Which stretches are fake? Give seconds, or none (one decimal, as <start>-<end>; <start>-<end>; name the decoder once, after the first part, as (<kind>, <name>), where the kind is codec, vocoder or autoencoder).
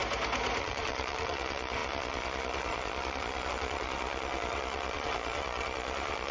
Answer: 0.6-6.3 (vocoder, Vocos)